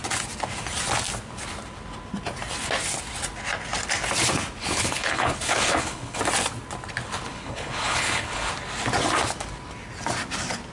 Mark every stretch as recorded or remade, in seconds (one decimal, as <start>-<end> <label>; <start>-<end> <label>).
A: 0.0-4.6 recorded; 4.6-6.2 remade; 6.2-7.3 recorded; 7.3-8.5 remade; 8.5-10.7 recorded